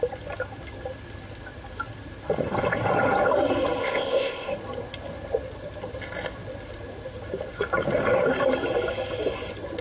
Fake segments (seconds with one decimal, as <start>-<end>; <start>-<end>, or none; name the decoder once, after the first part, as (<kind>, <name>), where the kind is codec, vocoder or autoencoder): 3.8-4.5 (codec, ZipCodec)